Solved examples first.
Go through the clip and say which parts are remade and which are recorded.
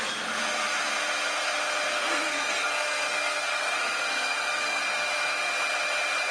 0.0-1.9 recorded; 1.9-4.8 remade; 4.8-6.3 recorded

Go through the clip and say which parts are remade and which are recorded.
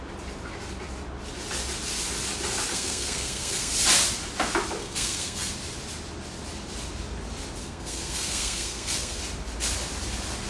0.0-2.7 recorded; 2.7-3.7 remade; 3.7-4.8 recorded; 4.8-5.5 remade; 5.5-7.6 recorded; 7.6-9.2 remade; 9.2-10.5 recorded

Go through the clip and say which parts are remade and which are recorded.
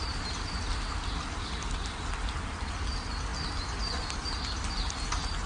0.0-5.5 recorded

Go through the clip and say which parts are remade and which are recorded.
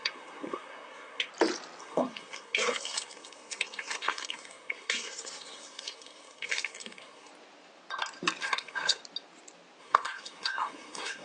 0.0-1.3 remade; 1.3-1.8 recorded; 1.8-7.3 remade; 7.3-8.4 recorded; 8.4-9.0 remade; 9.0-9.8 recorded; 9.8-11.2 remade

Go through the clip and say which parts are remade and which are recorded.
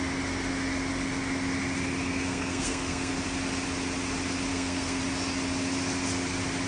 0.0-2.1 recorded; 2.1-3.1 remade; 3.1-4.5 recorded; 4.5-5.0 remade; 5.0-6.7 recorded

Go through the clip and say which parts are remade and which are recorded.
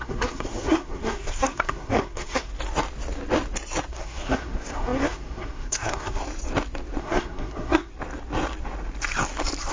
0.0-2.5 remade; 2.5-3.9 recorded; 3.9-6.2 remade; 6.2-7.0 recorded; 7.0-7.9 remade; 7.9-9.7 recorded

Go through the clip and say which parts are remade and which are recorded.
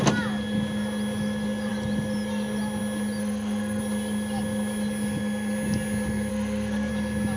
0.0-3.2 recorded; 3.2-3.8 remade; 3.8-6.3 recorded; 6.3-6.9 remade; 6.9-7.4 recorded